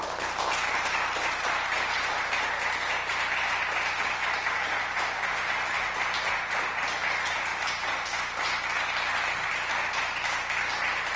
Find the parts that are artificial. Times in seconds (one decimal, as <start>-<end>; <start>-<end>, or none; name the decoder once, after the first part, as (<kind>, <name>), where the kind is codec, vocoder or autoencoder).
none